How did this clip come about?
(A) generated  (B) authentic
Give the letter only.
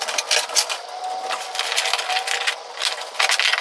B